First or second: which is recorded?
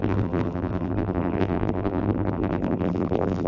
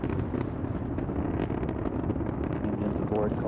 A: second